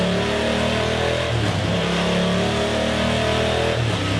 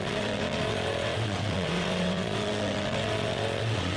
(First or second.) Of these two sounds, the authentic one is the first